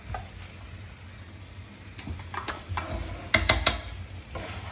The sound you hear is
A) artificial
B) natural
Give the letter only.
B